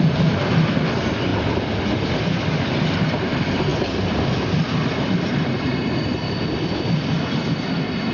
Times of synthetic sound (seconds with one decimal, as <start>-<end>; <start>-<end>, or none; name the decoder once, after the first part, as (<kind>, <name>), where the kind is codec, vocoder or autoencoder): none